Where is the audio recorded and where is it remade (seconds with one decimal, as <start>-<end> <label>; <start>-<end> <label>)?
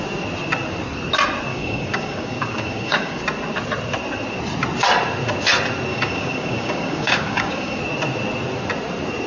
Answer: 0.0-1.5 recorded; 1.5-3.2 remade; 3.2-5.9 recorded; 5.9-7.8 remade; 7.8-9.3 recorded